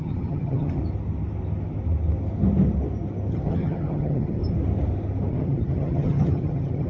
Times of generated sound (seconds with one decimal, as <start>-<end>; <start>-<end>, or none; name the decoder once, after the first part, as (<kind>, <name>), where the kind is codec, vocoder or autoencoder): 0.0-0.8 (vocoder, HiFi-GAN); 3.3-4.4; 5.3-6.9

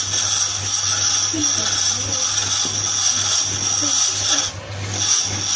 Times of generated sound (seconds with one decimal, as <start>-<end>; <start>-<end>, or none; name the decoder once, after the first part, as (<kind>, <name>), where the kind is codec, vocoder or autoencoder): none

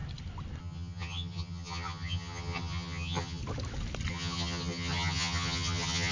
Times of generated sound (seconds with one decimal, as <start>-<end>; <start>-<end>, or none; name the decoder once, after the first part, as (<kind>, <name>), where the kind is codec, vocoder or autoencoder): 0.6-3.4 (vocoder, HiFi-GAN); 4.1-6.1

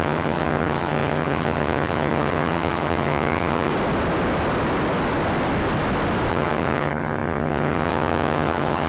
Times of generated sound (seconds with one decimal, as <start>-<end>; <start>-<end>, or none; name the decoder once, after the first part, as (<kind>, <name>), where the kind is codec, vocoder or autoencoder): 0.0-3.7 (vocoder, HiFi-GAN); 6.3-8.9

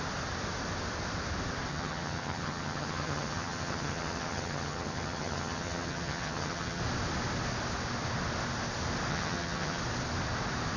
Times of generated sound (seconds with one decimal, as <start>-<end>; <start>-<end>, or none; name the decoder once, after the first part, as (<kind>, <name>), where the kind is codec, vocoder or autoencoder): 1.7-6.8 (vocoder, HiFi-GAN); 9.1-9.8

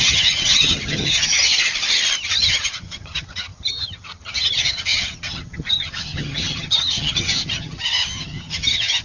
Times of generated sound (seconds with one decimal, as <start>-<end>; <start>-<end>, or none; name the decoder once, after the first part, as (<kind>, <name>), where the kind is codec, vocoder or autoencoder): 0.0-1.5 (vocoder, HiFi-GAN); 2.2-9.0